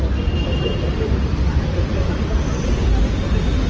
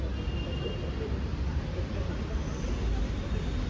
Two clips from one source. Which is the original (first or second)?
second